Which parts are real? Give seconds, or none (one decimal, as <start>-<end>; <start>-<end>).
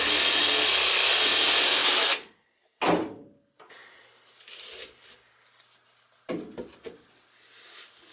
0.0-8.1